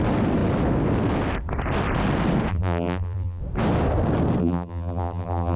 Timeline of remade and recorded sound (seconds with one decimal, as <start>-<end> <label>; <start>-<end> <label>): 0.0-2.5 recorded; 2.5-3.4 remade; 3.4-4.4 recorded; 4.4-5.6 remade